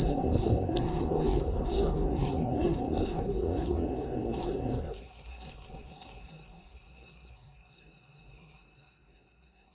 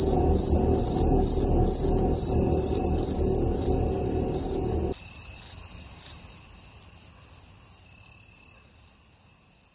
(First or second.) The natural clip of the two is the second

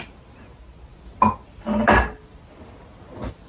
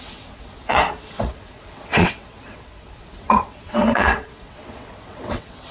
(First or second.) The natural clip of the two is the first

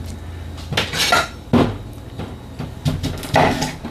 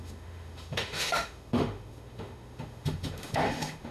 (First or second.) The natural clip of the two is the first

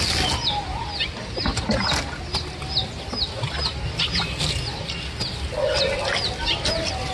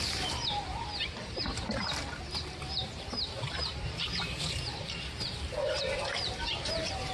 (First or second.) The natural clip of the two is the first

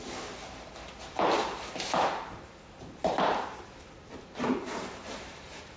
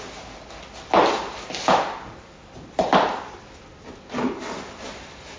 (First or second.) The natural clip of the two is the second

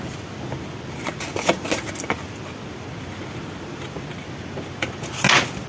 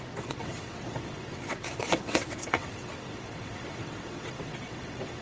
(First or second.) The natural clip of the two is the first